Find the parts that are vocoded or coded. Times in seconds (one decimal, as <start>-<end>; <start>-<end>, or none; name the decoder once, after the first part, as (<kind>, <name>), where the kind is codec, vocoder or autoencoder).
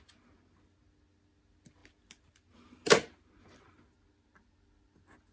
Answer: none